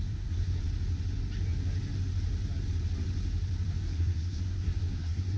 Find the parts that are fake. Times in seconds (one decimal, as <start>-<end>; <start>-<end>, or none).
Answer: 0.0-0.6; 3.8-5.4

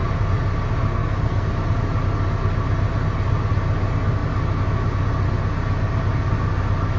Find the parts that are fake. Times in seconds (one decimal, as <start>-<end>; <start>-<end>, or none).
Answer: 0.9-1.5

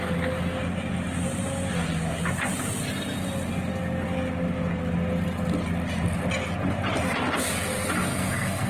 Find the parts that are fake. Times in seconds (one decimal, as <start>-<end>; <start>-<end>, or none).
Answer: 8.1-8.7

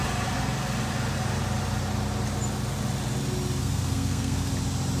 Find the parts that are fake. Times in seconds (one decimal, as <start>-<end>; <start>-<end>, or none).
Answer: 3.6-4.5